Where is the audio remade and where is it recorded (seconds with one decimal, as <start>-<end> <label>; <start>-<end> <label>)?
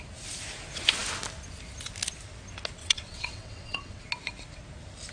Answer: 0.0-2.8 recorded; 2.8-4.0 remade; 4.0-5.1 recorded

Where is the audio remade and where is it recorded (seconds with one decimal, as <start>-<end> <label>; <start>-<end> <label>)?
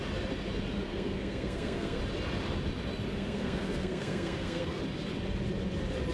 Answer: 0.0-0.9 recorded; 0.9-2.0 remade; 2.0-3.1 recorded; 3.1-4.8 remade; 4.8-6.1 recorded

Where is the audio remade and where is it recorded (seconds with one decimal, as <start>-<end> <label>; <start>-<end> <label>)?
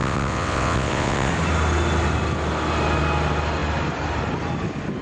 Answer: 0.0-1.3 remade; 1.3-5.0 recorded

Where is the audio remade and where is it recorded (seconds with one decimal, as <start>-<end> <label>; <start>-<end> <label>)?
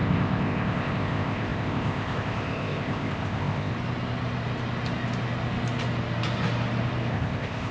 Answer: 0.0-3.7 remade; 3.7-7.1 recorded; 7.1-7.7 remade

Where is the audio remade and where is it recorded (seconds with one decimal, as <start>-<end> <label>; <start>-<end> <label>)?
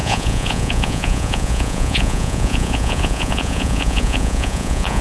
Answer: 0.0-5.0 remade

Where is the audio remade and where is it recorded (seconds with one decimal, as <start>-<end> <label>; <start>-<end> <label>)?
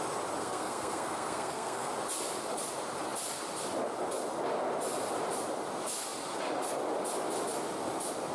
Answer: 0.0-0.4 recorded; 0.4-1.9 remade; 1.9-8.3 recorded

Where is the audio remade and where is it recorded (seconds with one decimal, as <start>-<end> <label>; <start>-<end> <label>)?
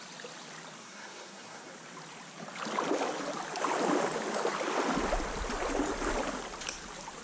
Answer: 0.0-0.8 recorded; 0.8-1.7 remade; 1.7-7.2 recorded